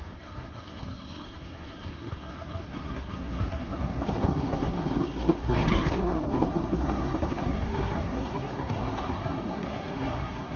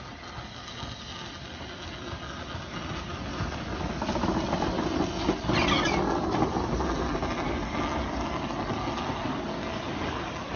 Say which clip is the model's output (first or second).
first